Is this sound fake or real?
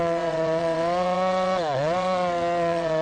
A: fake